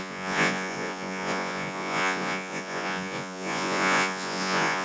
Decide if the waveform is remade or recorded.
remade